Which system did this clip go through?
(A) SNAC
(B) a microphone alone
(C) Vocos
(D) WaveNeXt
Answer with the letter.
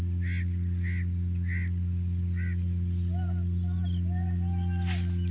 B